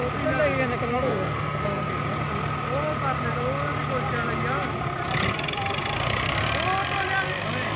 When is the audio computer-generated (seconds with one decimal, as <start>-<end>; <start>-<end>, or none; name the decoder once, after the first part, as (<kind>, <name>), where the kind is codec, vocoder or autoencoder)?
0.9-2.0 (codec, SNAC)